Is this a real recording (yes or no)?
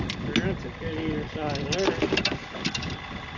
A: yes